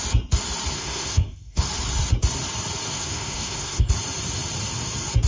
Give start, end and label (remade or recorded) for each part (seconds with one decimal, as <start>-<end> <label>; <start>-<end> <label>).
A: 0.0-0.7 recorded; 0.7-1.7 remade; 1.7-2.9 recorded; 2.9-3.9 remade; 3.9-5.3 recorded